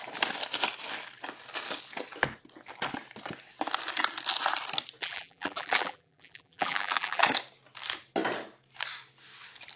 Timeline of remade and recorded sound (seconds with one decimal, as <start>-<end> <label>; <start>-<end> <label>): 0.0-5.0 recorded; 5.0-7.2 remade; 7.2-9.8 recorded